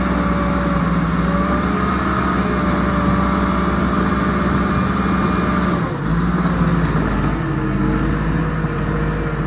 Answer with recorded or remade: recorded